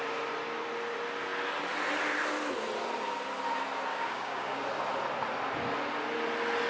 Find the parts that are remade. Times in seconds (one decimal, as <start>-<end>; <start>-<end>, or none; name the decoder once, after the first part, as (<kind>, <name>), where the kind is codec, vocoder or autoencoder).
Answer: 3.9-4.6 (codec, DAC)

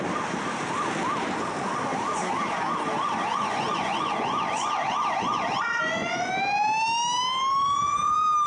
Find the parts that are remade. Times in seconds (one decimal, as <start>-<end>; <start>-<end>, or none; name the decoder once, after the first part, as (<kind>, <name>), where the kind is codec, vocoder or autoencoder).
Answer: 3.3-6.3 (vocoder, Vocos)